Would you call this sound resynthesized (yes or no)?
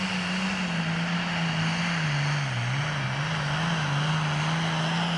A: no